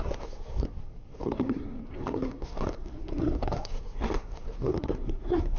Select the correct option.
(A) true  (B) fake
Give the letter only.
B